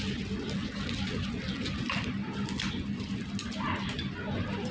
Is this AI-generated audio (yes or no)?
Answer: no